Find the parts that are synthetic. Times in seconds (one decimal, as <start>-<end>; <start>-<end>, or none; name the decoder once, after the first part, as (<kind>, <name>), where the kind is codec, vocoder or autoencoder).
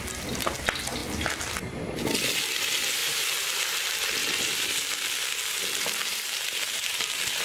6.1-7.4 (vocoder, BigVGAN v2)